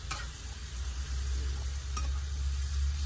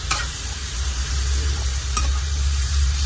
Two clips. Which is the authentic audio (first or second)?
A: first